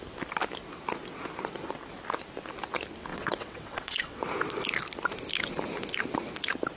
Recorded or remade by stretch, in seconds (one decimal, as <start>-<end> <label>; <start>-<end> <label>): 0.0-3.1 recorded; 3.1-4.2 remade; 4.2-6.8 recorded